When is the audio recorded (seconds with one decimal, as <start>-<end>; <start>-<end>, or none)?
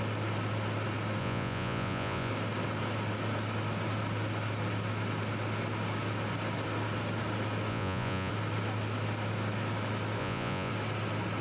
0.0-1.2; 2.3-7.7; 8.3-10.2; 10.7-11.4